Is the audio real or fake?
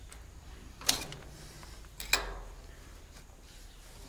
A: real